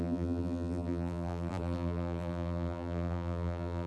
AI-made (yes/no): yes